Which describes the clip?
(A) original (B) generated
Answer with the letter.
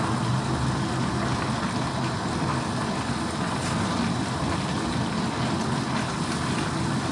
A